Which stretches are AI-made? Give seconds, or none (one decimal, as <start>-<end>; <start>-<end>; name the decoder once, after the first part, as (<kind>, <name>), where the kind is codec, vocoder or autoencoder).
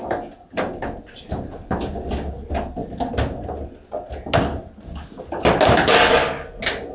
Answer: none